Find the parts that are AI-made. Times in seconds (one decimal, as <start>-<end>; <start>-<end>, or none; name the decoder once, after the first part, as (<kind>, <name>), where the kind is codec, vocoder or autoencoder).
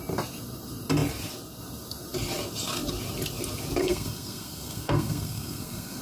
3.8-6.0 (codec, SNAC)